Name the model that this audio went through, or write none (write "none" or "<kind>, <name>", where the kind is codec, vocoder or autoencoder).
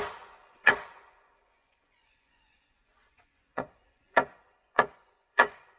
vocoder, Vocos